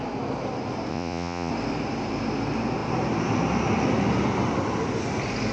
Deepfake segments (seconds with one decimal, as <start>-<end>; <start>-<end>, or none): 0.9-1.5

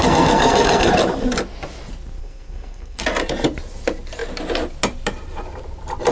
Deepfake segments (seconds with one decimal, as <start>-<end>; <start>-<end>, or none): 0.0-0.9; 2.2-3.0

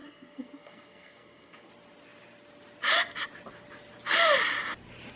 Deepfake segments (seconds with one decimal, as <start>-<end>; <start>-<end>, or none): 0.0-1.7

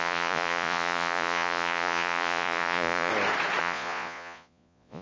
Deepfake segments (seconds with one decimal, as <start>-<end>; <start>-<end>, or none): 0.0-3.1; 3.6-5.0